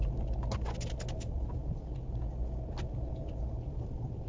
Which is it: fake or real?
real